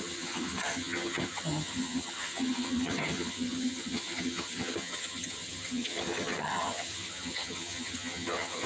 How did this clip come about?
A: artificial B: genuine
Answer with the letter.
A